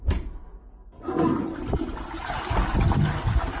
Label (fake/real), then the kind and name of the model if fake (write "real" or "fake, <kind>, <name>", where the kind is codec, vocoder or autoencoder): real